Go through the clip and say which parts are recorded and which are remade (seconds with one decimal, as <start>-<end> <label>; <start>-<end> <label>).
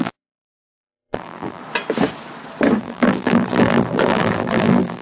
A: 0.0-1.6 remade; 1.6-2.8 recorded; 2.8-5.0 remade